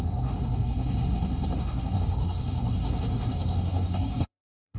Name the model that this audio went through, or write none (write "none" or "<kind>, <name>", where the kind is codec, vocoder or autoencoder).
codec, SNAC